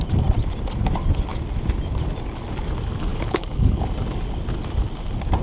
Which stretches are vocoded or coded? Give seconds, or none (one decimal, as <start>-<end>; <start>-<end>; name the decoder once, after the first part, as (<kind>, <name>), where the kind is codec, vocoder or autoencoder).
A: 3.1-3.8 (codec, HILCodec)